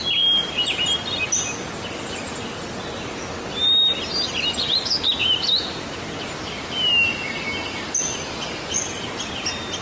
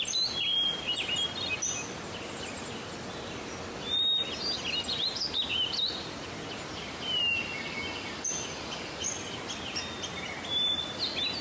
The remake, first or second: second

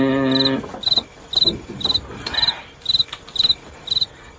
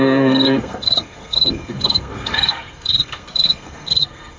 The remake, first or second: second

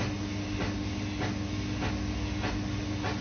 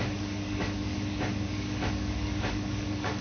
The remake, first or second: second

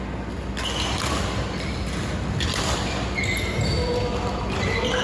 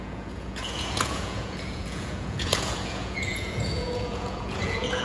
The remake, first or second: second